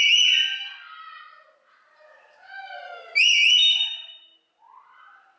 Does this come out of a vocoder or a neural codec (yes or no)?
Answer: no